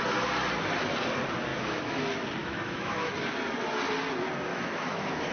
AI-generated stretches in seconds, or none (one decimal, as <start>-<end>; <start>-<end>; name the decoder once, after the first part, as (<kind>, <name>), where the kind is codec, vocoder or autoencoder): 1.5-2.0 (autoencoder, DAC-VAE); 2.4-3.1; 4.5-5.3